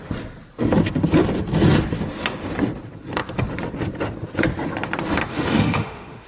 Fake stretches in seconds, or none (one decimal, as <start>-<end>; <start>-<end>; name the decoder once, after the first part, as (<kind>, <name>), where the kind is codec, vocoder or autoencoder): 5.3-6.3 (autoencoder, DAC-VAE)